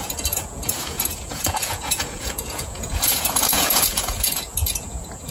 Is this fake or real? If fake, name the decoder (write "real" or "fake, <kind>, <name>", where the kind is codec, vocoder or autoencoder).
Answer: fake, vocoder, Vocos